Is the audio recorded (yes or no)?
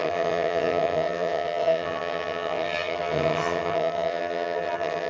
no